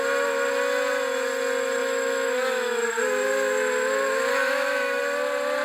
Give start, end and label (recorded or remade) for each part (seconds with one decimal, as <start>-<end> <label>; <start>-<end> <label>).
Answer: 0.0-1.8 recorded; 1.8-2.8 remade; 2.8-4.3 recorded; 4.3-5.0 remade; 5.0-5.6 recorded